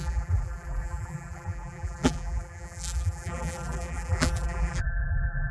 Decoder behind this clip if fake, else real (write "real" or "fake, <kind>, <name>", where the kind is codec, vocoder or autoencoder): fake, vocoder, BigVGAN v2